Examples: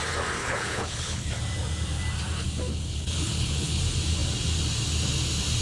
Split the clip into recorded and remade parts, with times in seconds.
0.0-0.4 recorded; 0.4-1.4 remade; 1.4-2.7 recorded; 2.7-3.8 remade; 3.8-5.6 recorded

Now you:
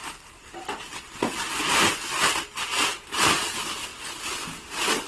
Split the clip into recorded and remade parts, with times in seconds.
0.0-5.1 recorded

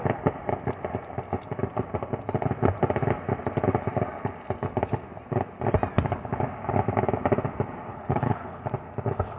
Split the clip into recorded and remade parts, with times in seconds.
0.0-7.9 recorded; 7.9-8.6 remade; 8.6-9.4 recorded